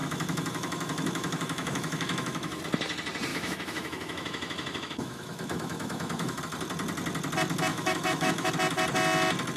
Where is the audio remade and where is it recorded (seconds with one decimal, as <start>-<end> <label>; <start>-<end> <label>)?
0.0-2.6 remade; 2.6-3.3 recorded; 3.3-6.4 remade; 6.4-7.7 recorded; 7.7-8.5 remade; 8.5-9.6 recorded